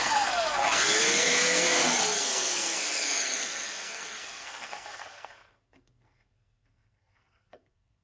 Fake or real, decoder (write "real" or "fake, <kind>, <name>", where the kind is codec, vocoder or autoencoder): fake, codec, SNAC